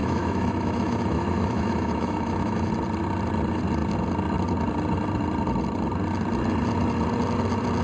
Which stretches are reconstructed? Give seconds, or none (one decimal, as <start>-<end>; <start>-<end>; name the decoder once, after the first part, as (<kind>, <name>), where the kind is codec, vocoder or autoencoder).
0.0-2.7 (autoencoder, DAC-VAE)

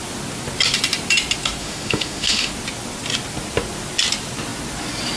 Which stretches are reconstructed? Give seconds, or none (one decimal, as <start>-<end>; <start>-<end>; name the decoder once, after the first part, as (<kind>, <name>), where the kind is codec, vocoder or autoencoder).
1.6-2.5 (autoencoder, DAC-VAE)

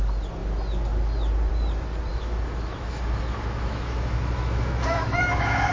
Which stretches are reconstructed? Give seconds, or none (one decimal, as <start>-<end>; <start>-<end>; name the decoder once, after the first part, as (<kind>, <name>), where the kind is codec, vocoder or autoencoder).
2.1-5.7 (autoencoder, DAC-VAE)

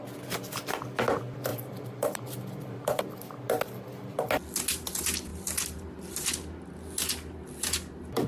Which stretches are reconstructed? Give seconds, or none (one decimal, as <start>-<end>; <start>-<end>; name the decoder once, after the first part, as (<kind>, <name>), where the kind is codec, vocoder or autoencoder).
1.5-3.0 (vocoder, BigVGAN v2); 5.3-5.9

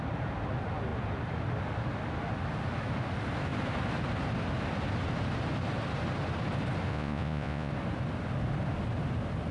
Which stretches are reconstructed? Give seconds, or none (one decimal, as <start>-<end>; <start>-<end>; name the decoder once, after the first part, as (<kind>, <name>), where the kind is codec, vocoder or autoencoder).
6.9-7.7 (vocoder, Vocos)

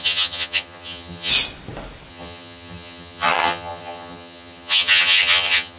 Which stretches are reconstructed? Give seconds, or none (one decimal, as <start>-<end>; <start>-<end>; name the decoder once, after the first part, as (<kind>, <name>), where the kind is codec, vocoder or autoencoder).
0.0-1.3 (vocoder, HiFi-GAN); 2.1-5.8

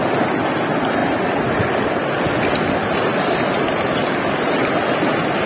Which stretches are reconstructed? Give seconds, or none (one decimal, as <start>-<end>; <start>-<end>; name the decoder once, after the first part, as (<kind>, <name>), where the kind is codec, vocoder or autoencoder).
1.0-1.9 (vocoder, BigVGAN v2); 3.1-4.7

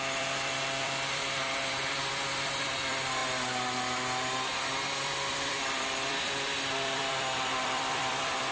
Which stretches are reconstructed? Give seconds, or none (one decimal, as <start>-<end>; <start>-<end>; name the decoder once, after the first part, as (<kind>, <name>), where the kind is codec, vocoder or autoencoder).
0.0-3.2 (vocoder, BigVGAN v2); 4.5-8.5